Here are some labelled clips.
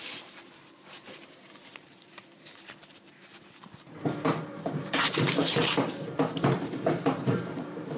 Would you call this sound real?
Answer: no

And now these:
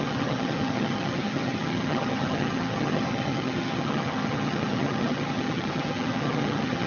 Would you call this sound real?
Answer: no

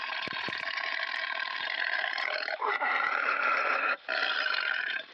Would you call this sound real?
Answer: no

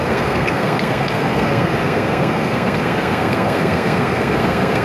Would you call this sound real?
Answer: no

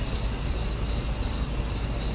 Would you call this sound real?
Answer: yes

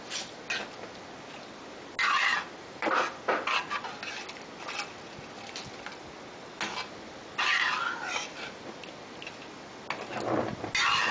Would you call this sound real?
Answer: yes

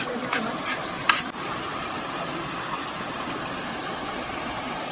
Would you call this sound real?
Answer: no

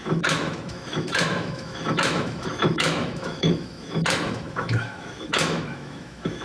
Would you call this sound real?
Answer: no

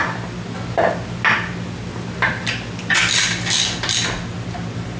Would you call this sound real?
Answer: yes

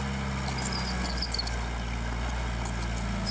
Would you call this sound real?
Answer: yes